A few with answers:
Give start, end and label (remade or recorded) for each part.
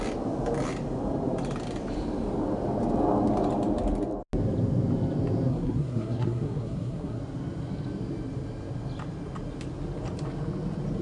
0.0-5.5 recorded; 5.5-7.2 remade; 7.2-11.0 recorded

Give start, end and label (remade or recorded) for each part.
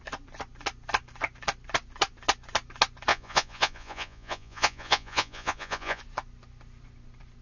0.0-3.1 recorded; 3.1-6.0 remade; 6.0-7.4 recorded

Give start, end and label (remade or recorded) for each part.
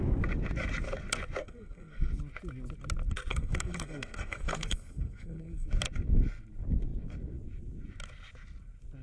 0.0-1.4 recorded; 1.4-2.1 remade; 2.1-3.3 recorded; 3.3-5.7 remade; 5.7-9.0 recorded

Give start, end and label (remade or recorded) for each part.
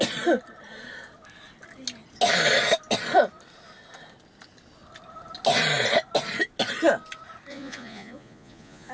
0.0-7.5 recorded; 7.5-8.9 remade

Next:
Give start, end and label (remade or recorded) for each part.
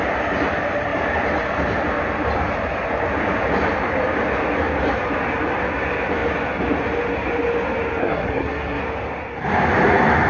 0.0-8.0 recorded; 8.0-8.8 remade; 8.8-10.3 recorded